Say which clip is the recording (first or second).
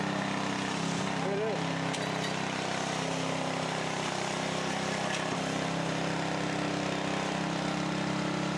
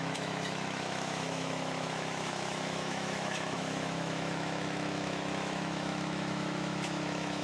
first